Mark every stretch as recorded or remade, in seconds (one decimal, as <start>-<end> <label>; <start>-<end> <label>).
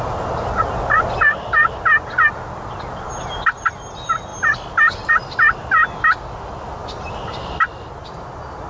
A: 0.0-8.7 recorded